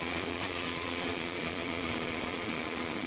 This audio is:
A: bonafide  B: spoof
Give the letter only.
B